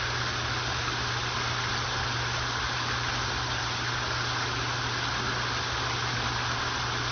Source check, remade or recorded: recorded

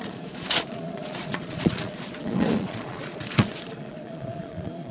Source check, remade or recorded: remade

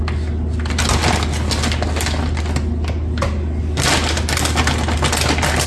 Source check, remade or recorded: recorded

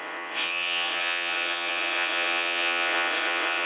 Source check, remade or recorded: remade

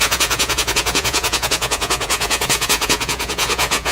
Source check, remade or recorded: remade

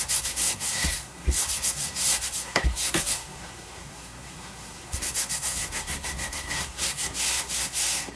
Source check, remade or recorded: remade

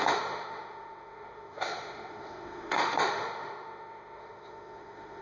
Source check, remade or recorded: remade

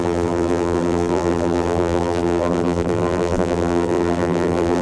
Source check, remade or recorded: remade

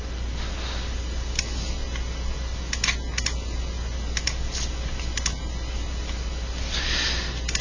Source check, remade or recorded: recorded